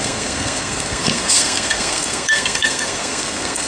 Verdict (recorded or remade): remade